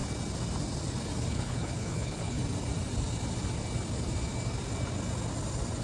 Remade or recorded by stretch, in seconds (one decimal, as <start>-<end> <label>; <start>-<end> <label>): 0.0-1.3 recorded; 1.3-2.4 remade; 2.4-5.8 recorded